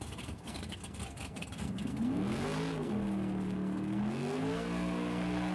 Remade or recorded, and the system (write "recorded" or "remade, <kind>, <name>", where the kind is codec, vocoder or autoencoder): remade, codec, SNAC